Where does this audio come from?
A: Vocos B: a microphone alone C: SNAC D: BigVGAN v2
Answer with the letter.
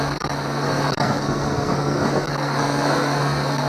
C